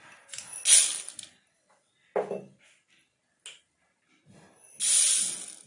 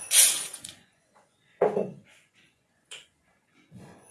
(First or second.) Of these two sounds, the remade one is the second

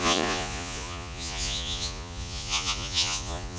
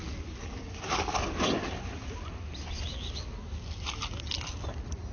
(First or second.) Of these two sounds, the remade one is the first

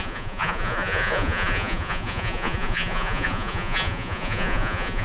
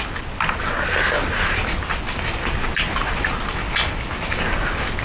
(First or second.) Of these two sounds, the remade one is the first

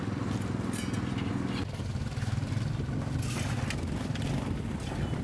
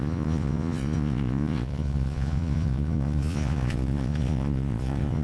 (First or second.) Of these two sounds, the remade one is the second